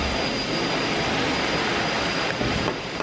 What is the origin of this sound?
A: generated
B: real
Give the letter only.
B